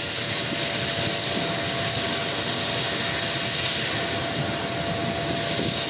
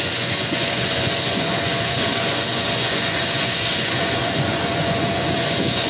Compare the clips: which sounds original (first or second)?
first